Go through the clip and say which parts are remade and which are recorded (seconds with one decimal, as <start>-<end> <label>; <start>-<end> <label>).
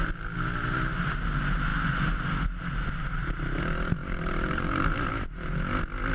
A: 0.0-4.0 recorded; 4.0-5.1 remade; 5.1-6.1 recorded